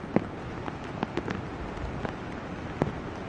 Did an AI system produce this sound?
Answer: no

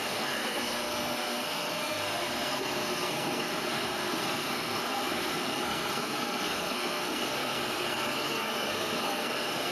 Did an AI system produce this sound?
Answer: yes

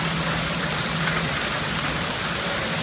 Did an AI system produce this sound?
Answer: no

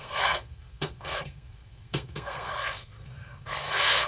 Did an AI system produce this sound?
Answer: yes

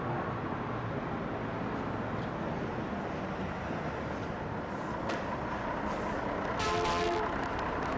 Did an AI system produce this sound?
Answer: no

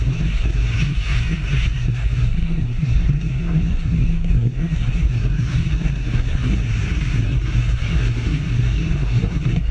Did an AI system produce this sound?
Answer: yes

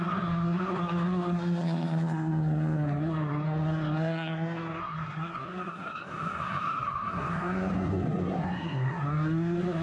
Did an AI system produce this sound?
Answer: yes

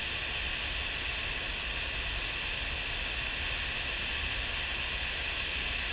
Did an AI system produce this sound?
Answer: no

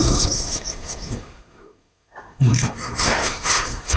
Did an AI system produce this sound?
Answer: yes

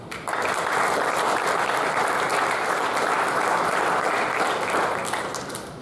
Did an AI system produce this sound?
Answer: no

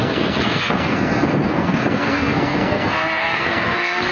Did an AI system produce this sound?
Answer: yes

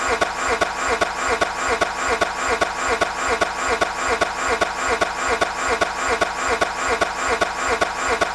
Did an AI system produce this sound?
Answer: no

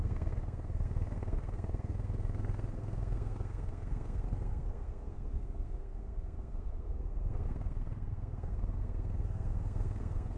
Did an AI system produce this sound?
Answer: yes